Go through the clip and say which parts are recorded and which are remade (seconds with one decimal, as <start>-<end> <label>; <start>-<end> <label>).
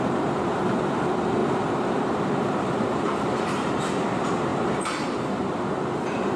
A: 0.0-6.4 remade